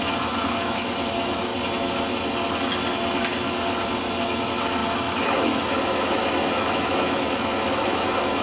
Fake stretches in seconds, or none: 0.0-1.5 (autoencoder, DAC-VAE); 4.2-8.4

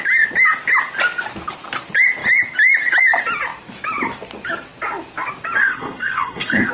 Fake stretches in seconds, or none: 5.6-6.7 (codec, SNAC)

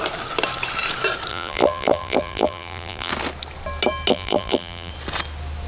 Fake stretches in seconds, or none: 1.3-3.1 (vocoder, BigVGAN v2); 4.1-4.9

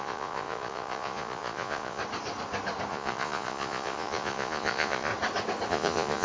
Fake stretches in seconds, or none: 0.0-2.0 (vocoder, Vocos); 2.9-5.1; 5.7-6.2

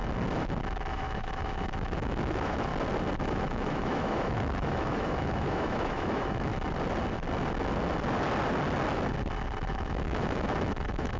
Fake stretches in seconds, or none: 0.6-2.7 (autoencoder, DAC-VAE); 3.2-6.5; 9.7-11.2

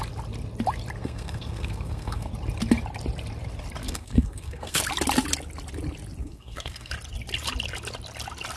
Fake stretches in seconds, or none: 1.0-2.3 (codec, SNAC); 3.8-4.8; 6.2-6.9

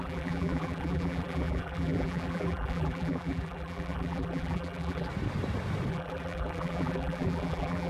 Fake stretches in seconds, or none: 0.0-5.1 (vocoder, BigVGAN v2); 5.9-7.9

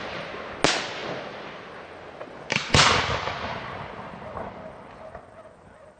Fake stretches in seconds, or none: none